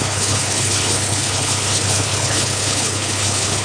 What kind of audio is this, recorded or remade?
remade